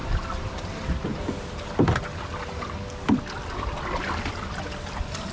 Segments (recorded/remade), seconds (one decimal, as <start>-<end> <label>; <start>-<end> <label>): 0.0-5.3 recorded